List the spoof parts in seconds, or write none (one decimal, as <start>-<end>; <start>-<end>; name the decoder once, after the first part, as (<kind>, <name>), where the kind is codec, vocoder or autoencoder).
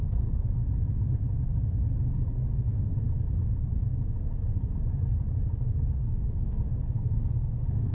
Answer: 0.0-0.6 (codec, SNAC); 2.3-2.9; 5.9-7.9